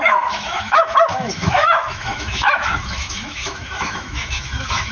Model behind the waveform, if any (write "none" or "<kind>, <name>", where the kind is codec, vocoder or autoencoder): autoencoder, DAC-VAE